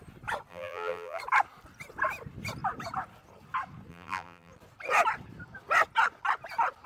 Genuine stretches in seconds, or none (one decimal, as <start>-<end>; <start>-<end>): 0.0-0.5; 1.2-3.9; 4.5-6.9